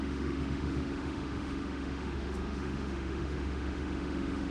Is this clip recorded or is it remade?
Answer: remade